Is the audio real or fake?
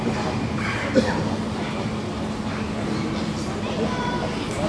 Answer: real